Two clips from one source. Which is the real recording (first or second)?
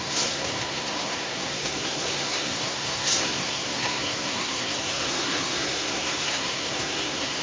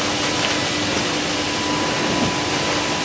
second